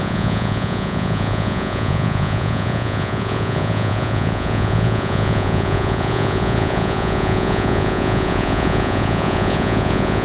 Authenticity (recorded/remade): remade